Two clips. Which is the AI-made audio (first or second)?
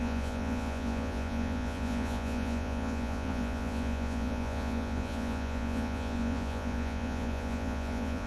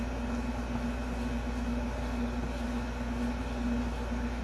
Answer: first